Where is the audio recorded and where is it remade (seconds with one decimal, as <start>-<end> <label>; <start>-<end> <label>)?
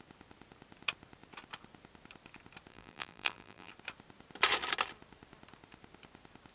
0.0-2.7 recorded; 2.7-3.7 remade; 3.7-6.5 recorded